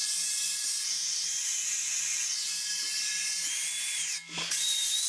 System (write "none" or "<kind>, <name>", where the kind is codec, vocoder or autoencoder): none